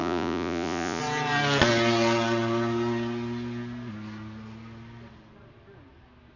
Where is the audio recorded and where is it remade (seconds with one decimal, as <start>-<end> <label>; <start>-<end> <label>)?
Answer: 0.0-1.0 remade; 1.0-6.4 recorded